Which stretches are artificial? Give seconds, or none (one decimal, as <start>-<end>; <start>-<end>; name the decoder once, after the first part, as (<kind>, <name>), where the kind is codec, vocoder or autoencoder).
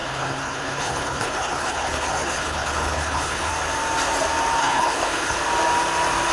0.0-3.5 (codec, HILCodec); 4.6-5.4